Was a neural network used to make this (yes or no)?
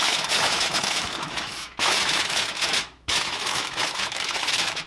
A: yes